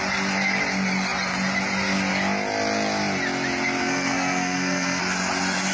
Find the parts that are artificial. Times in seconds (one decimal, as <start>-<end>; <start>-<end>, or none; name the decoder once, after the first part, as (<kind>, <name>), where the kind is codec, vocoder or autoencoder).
3.8-5.0 (codec, SNAC)